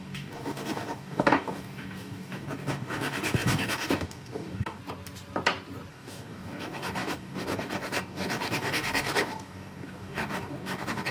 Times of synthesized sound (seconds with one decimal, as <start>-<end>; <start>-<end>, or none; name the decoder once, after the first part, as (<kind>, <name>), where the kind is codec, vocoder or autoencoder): 0.0-4.8 (codec, DAC); 5.9-11.1